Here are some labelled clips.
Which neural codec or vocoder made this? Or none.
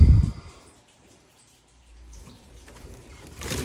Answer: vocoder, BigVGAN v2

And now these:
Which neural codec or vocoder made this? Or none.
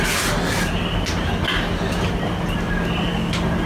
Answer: none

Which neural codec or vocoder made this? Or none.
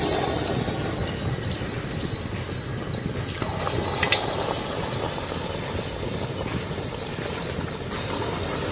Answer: none